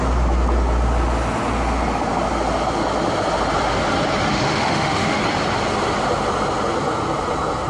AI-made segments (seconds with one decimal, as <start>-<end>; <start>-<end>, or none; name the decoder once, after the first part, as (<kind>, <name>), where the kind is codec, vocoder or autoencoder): 4.3-5.2 (autoencoder, DAC-VAE)